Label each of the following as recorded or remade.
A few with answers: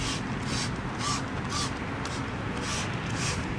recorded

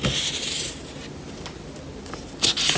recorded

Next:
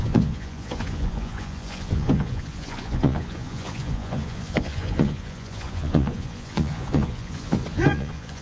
remade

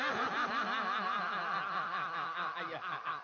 recorded